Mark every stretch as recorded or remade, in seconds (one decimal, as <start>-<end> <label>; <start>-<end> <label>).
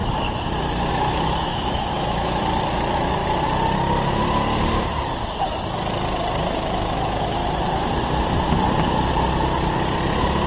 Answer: 0.0-0.9 recorded; 0.9-3.2 remade; 3.2-6.5 recorded; 6.5-7.4 remade; 7.4-10.5 recorded